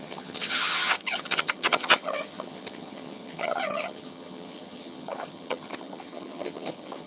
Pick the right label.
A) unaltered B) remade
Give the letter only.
B